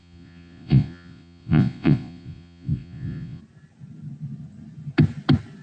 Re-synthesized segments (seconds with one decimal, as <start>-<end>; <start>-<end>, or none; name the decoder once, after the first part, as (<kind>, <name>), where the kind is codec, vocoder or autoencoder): 0.0-3.4 (vocoder, Vocos)